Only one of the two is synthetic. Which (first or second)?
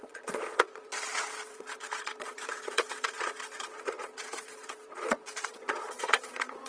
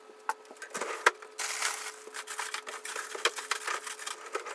first